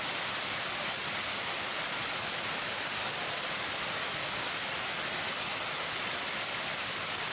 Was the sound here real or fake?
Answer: real